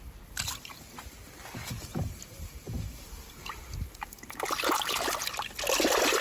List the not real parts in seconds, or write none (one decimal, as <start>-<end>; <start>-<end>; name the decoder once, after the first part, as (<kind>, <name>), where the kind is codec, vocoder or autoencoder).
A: 1.9-3.6 (vocoder, BigVGAN v2)